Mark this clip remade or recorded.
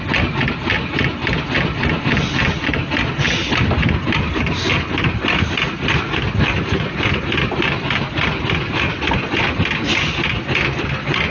recorded